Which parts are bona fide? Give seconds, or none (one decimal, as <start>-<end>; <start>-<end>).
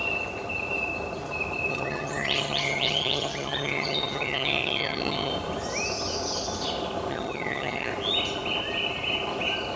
0.0-1.7; 5.3-7.1; 7.9-9.8